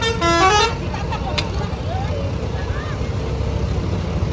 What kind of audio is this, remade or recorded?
recorded